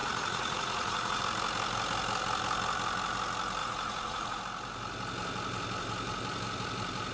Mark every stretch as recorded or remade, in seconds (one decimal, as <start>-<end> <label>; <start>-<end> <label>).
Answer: 0.0-1.2 remade; 1.2-3.6 recorded; 3.6-4.4 remade; 4.4-7.1 recorded